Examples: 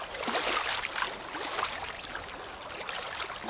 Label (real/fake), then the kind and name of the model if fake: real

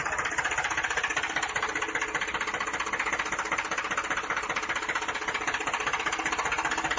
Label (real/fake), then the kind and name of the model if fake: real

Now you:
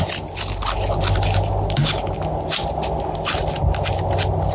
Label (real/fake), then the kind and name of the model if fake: real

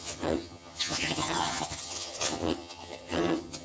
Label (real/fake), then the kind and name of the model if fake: fake, vocoder, HiFi-GAN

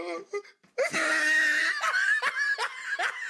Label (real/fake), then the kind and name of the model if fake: real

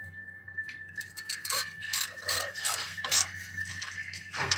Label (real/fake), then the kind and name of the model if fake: fake, codec, SNAC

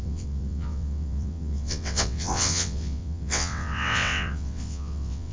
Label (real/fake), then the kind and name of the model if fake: fake, vocoder, WaveNeXt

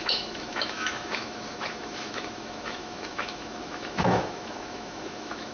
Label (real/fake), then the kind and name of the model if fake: fake, autoencoder, DAC-VAE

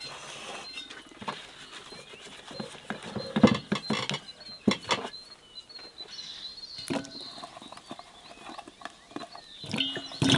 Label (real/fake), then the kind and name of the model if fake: real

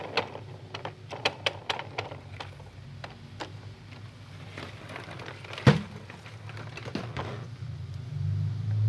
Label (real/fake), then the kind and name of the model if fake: real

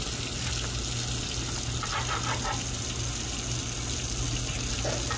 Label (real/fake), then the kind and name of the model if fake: real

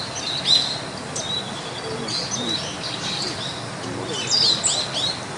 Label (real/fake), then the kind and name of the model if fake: real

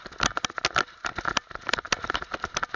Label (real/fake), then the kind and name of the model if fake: real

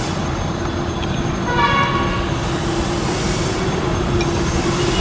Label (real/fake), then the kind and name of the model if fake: real